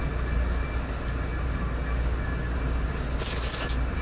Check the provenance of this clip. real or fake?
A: real